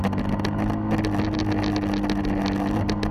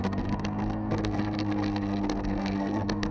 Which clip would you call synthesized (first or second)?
second